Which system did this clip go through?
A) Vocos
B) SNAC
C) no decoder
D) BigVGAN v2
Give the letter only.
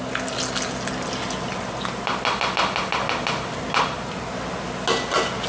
C